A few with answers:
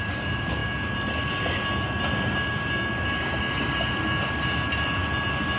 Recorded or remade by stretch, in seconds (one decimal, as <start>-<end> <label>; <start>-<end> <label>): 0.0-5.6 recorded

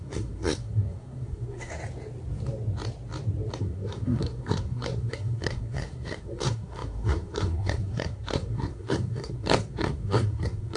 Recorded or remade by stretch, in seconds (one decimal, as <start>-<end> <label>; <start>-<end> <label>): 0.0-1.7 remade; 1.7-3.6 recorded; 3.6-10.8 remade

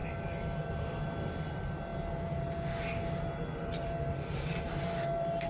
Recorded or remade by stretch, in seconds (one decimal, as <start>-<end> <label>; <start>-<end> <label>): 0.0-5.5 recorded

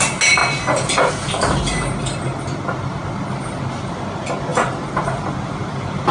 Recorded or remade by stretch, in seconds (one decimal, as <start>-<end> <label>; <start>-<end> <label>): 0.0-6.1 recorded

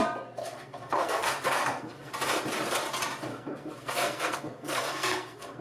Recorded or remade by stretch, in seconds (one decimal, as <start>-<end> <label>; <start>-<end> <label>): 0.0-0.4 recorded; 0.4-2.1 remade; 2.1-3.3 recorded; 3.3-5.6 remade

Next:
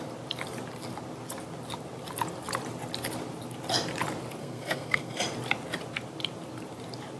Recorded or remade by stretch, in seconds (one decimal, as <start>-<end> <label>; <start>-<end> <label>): 0.0-4.4 recorded; 4.4-5.2 remade; 5.2-7.2 recorded

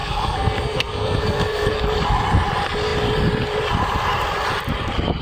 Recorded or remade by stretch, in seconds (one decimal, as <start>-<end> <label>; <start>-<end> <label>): 0.0-1.8 remade; 1.8-5.2 recorded

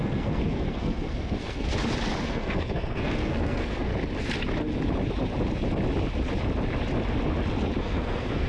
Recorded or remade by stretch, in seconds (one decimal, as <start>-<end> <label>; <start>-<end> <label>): 0.0-1.7 remade; 1.7-2.2 recorded; 2.2-3.9 remade; 3.9-7.8 recorded; 7.8-8.5 remade